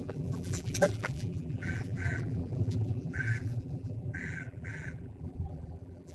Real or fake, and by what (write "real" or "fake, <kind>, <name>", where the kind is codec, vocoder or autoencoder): fake, vocoder, BigVGAN v2